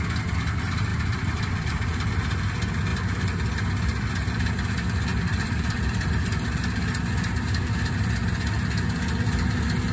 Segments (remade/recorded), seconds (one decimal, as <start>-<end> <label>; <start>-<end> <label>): 0.0-0.9 recorded; 0.9-1.7 remade; 1.7-2.9 recorded; 2.9-4.1 remade; 4.1-5.1 recorded; 5.1-7.0 remade; 7.0-9.9 recorded